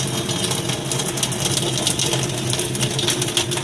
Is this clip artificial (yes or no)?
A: no